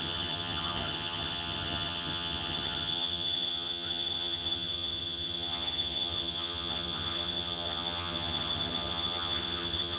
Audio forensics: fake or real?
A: fake